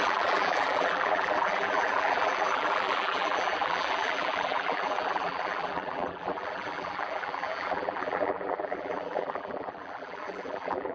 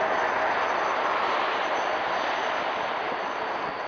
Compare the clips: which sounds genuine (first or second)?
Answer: second